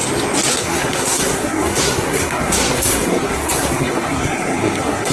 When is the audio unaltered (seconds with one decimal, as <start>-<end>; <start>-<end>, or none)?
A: 0.0-0.5